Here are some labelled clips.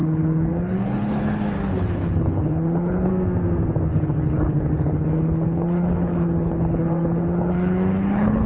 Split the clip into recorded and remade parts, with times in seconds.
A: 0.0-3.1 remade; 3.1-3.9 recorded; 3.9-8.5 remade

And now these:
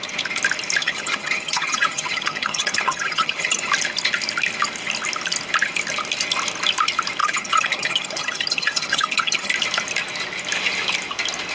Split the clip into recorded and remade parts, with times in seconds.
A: 0.0-0.8 recorded; 0.8-3.7 remade; 3.7-7.2 recorded; 7.2-9.5 remade; 9.5-11.5 recorded

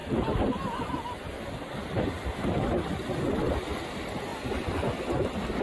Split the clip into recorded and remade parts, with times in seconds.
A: 0.0-5.6 recorded

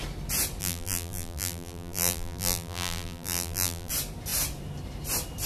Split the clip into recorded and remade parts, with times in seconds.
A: 0.0-0.6 recorded; 0.6-3.9 remade; 3.9-5.5 recorded

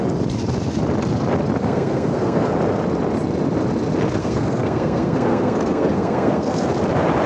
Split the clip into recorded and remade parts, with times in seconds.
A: 0.0-1.6 recorded; 1.6-2.5 remade; 2.5-4.2 recorded; 4.2-6.7 remade; 6.7-7.3 recorded

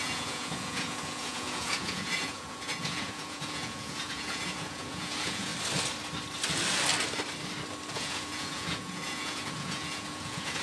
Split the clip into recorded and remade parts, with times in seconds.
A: 0.0-5.5 remade; 5.5-7.9 recorded; 7.9-10.6 remade

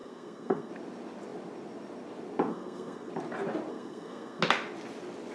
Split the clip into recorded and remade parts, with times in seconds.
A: 0.0-0.7 remade; 0.7-2.5 recorded; 2.5-3.1 remade; 3.1-3.7 recorded; 3.7-4.4 remade; 4.4-5.3 recorded

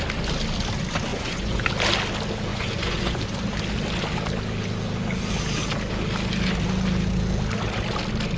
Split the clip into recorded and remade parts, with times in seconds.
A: 0.0-1.1 recorded; 1.1-1.7 remade; 1.7-2.5 recorded; 2.5-3.2 remade; 3.2-8.4 recorded